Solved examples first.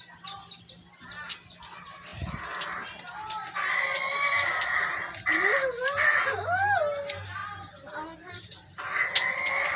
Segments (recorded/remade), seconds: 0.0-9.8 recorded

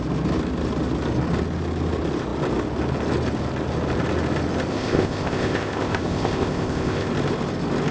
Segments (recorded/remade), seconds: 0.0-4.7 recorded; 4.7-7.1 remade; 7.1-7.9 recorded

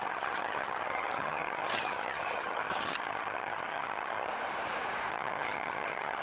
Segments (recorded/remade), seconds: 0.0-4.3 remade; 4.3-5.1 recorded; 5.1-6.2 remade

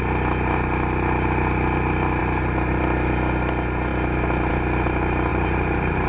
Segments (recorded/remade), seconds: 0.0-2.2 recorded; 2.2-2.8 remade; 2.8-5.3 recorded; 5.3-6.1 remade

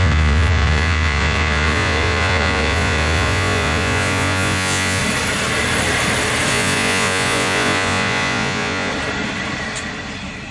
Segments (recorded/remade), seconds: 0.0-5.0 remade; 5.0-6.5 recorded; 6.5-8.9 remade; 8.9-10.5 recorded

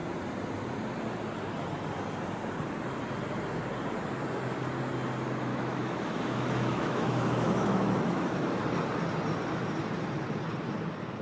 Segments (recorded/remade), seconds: 0.0-5.5 recorded; 5.5-8.6 remade; 8.6-11.2 recorded

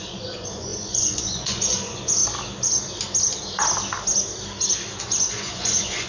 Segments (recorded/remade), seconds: 0.0-2.2 remade; 2.2-5.0 recorded; 5.0-6.1 remade

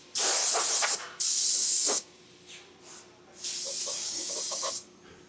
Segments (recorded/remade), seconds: 0.0-1.6 recorded; 1.6-2.2 remade; 2.2-3.9 recorded; 3.9-4.7 remade; 4.7-5.3 recorded